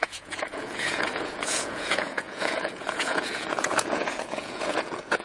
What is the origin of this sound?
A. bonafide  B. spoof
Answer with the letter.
B